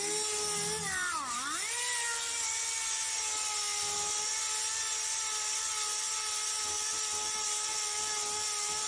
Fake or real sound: real